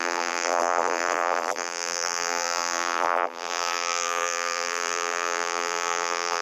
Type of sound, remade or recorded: remade